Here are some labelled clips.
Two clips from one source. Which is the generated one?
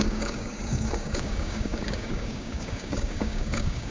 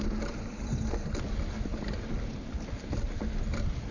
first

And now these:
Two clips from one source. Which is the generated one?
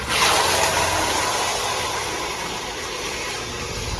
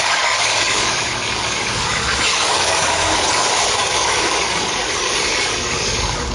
second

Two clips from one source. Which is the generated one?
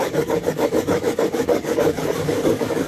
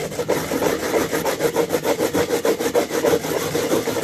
first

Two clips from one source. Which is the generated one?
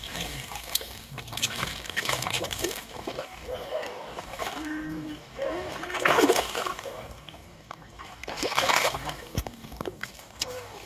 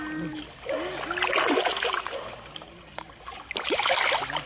first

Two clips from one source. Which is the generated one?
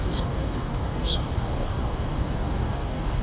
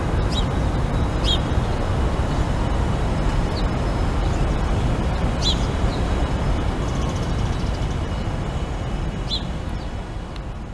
first